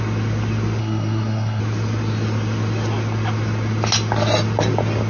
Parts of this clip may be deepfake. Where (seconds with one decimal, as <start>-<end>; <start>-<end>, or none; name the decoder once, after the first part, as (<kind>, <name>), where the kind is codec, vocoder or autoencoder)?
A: 0.8-1.6 (codec, SNAC)

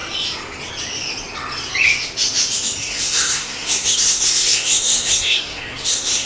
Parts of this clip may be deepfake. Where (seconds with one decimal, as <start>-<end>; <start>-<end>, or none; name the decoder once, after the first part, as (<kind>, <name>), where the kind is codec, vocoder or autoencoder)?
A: 2.8-6.3 (codec, SNAC)

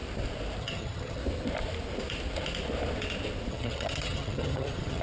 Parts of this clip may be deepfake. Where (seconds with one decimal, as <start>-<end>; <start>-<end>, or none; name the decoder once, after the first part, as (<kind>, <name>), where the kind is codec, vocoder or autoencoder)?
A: 0.6-1.2 (vocoder, HiFi-GAN); 3.5-5.0

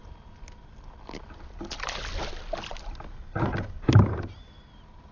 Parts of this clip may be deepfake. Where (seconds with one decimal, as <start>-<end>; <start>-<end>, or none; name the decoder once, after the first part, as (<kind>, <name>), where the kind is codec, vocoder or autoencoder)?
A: none